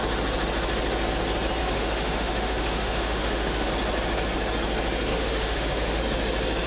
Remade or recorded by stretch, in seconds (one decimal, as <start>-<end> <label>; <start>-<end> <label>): 0.0-1.6 recorded; 1.6-3.7 remade; 3.7-5.1 recorded; 5.1-6.0 remade; 6.0-6.7 recorded